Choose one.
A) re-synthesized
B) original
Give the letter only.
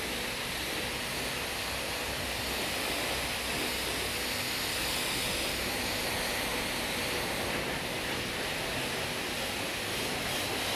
B